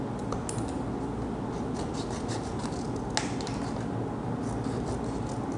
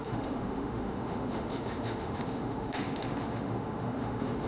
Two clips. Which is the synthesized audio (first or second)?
second